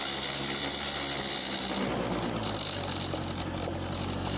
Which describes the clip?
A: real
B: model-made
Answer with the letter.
A